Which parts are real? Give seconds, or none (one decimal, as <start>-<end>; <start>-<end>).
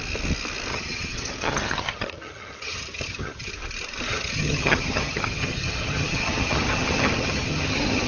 0.0-0.7; 3.5-4.1